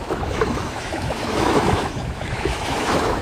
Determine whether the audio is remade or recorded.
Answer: remade